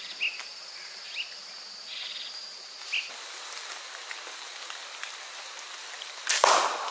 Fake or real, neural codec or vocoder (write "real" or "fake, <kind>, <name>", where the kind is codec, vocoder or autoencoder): real